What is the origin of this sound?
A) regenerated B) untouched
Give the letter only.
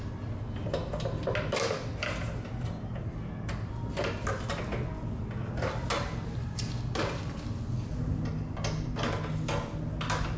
B